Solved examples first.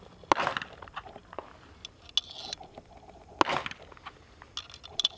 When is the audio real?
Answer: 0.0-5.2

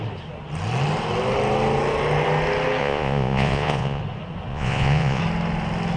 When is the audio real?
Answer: 0.0-2.8; 4.0-4.5; 5.2-6.0

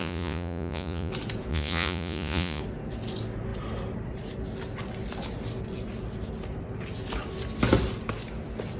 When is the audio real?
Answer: 1.1-1.5; 2.6-8.8

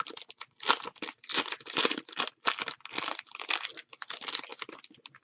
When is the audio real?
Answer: 0.0-5.2

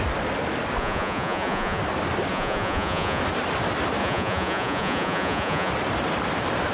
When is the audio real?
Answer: 0.0-0.8; 1.8-2.3; 3.2-4.0; 5.7-6.7

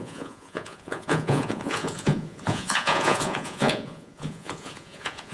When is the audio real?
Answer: none

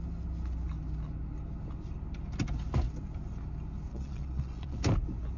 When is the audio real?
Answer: 0.0-3.9; 4.8-5.4